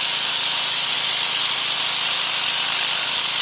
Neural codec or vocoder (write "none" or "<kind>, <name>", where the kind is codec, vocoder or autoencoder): none